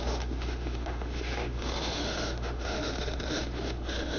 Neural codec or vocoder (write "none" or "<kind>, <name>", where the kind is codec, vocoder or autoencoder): autoencoder, DAC-VAE